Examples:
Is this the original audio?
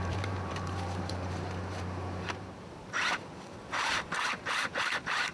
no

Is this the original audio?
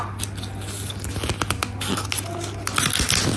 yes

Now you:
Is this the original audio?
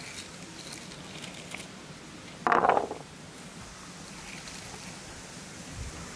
yes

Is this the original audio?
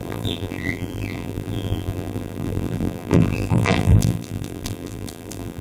no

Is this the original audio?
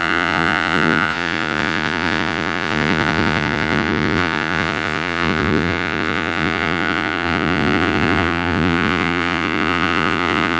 no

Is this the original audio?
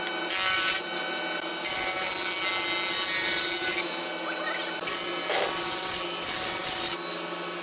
yes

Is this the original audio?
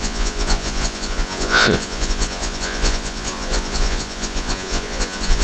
no